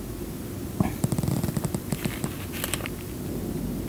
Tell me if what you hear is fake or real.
real